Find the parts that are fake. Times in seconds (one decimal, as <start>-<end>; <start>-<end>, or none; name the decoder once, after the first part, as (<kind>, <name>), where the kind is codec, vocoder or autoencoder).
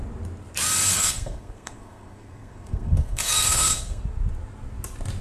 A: 0.9-4.0 (codec, SNAC)